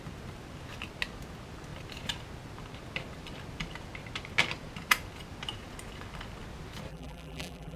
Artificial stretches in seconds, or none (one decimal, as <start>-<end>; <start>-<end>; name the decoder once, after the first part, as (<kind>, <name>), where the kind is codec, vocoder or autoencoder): 6.9-7.8 (vocoder, BigVGAN v2)